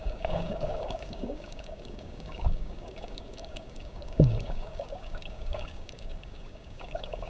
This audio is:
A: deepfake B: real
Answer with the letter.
A